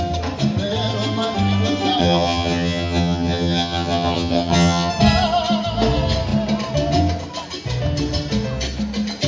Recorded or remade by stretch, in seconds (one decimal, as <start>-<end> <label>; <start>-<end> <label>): 0.0-2.0 recorded; 2.0-4.9 remade; 4.9-9.3 recorded